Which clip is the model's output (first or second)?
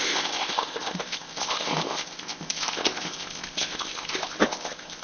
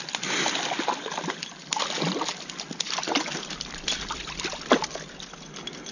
first